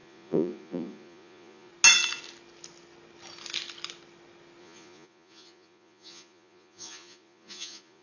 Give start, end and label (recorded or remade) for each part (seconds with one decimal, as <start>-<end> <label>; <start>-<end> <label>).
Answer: 0.0-1.7 remade; 1.7-4.6 recorded; 4.6-8.0 remade